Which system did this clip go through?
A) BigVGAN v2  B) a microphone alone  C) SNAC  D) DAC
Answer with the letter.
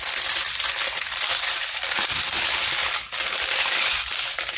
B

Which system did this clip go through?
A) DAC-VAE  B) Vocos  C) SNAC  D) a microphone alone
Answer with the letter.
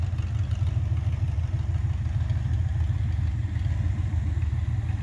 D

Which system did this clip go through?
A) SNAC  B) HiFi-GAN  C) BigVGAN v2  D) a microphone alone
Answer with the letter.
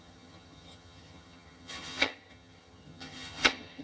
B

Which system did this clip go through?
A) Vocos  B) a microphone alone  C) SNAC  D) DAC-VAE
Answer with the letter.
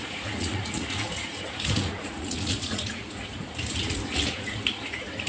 A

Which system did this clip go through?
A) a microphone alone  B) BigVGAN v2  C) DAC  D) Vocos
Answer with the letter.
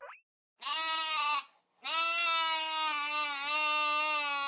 A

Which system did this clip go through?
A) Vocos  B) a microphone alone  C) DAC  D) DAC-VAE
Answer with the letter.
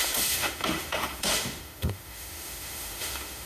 D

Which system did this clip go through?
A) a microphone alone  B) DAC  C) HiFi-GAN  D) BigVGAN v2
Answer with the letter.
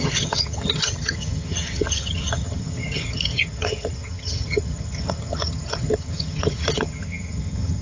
C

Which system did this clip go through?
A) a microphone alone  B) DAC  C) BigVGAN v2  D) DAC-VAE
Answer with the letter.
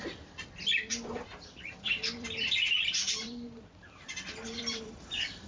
C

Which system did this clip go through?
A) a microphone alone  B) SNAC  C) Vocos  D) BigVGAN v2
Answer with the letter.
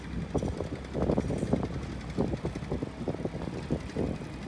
A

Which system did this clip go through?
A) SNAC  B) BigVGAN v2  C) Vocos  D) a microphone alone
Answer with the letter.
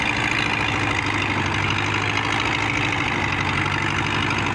D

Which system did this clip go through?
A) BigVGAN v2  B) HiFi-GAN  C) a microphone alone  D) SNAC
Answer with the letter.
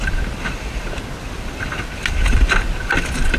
C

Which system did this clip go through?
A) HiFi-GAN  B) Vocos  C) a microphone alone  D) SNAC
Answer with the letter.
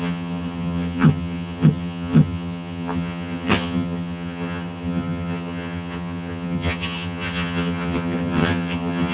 A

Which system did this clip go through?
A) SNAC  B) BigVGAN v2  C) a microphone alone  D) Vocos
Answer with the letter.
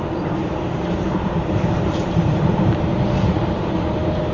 B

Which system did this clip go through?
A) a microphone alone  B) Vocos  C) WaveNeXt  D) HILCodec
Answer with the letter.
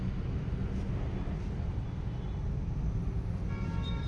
A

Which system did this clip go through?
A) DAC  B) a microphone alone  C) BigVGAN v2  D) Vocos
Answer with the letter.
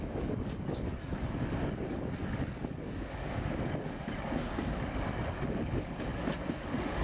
A